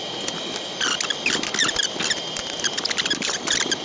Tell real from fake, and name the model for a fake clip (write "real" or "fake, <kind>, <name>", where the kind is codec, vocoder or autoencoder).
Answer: real